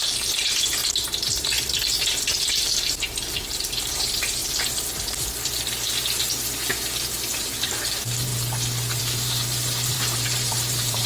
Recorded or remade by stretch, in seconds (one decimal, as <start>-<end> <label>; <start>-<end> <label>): 0.0-0.8 remade; 0.8-3.9 recorded; 3.9-4.4 remade; 4.4-7.4 recorded; 7.4-8.3 remade; 8.3-9.0 recorded; 9.0-11.1 remade